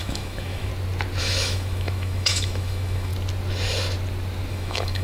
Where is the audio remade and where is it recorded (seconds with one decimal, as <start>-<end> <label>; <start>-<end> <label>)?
0.0-0.7 remade; 0.7-1.2 recorded; 1.2-3.1 remade; 3.1-4.5 recorded; 4.5-5.0 remade